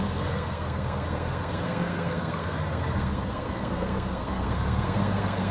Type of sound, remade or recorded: remade